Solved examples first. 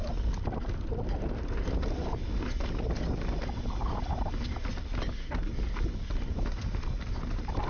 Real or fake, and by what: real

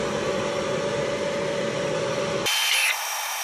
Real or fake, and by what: real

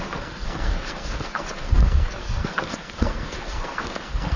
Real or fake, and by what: fake, codec, SNAC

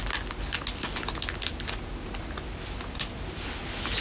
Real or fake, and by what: real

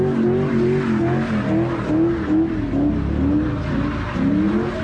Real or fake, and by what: real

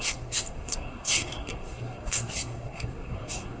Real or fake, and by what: fake, codec, SNAC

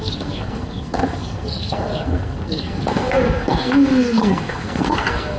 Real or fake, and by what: fake, codec, SNAC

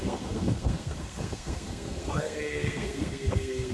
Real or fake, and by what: fake, codec, SNAC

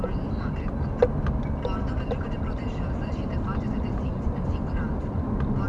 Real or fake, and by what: real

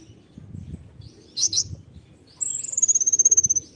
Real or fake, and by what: real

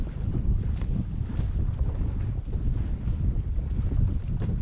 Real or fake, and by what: real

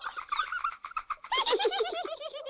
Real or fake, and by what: real